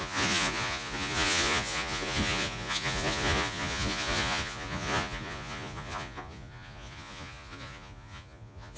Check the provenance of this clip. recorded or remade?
remade